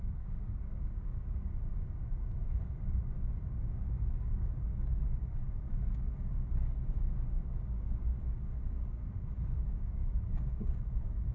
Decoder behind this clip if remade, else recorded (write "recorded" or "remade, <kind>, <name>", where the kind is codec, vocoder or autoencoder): remade, codec, DAC